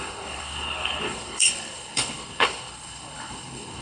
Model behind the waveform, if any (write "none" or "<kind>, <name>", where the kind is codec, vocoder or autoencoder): codec, HILCodec